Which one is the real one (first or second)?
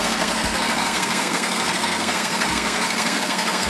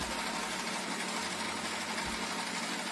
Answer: second